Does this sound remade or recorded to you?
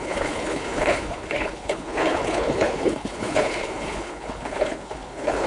remade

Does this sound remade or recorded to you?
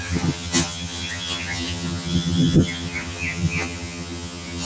remade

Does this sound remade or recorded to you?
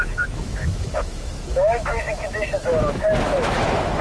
remade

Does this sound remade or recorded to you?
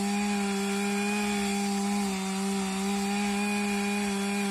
recorded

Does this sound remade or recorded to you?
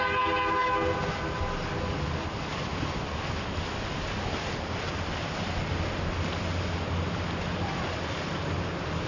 recorded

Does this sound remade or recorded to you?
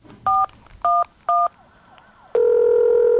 recorded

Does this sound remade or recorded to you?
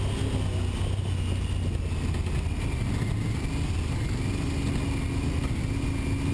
recorded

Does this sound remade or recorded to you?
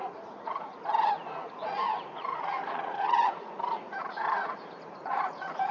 remade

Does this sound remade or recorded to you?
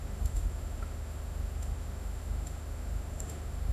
remade